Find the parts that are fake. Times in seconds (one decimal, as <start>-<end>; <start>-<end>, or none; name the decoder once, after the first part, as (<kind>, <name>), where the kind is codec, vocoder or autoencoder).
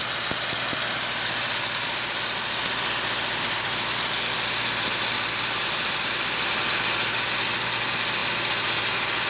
8.2-8.9 (vocoder, BigVGAN v2)